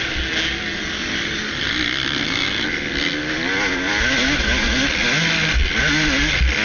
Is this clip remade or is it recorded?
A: recorded